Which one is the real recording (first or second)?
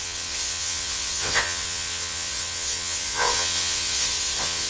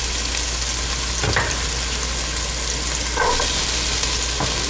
second